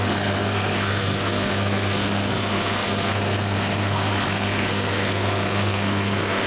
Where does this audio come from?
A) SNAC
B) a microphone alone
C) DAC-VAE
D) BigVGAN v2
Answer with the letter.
A